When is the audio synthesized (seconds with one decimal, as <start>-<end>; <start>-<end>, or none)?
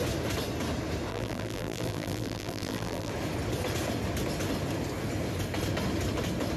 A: 1.1-3.1